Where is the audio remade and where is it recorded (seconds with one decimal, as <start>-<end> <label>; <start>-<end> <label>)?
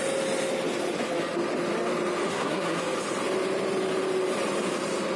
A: 0.0-2.3 recorded; 2.3-2.8 remade; 2.8-5.2 recorded